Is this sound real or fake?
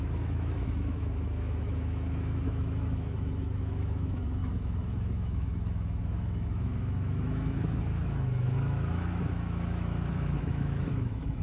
fake